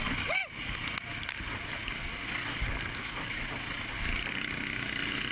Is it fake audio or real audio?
real